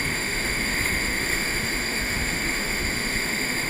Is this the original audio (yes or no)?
no